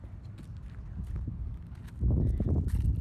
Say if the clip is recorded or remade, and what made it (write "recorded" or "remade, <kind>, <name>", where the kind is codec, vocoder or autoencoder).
recorded